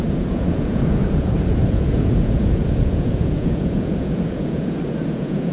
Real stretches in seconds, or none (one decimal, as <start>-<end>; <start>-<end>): none